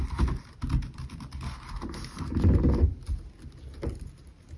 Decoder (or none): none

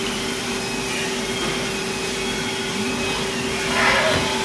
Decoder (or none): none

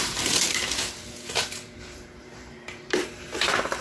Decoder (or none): vocoder, BigVGAN v2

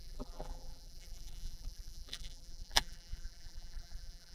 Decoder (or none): vocoder, BigVGAN v2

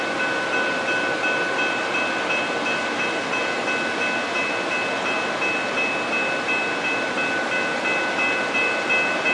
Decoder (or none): none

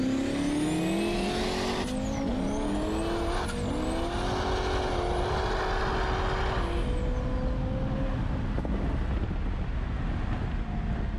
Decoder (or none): none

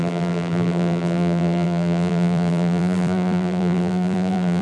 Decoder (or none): vocoder, BigVGAN v2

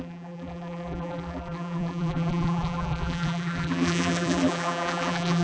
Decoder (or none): vocoder, BigVGAN v2